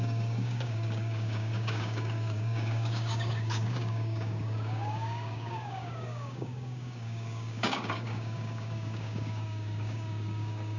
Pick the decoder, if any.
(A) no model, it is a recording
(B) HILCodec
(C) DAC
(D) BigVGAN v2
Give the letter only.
C